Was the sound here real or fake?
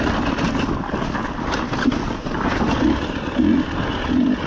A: real